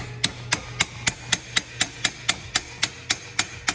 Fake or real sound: real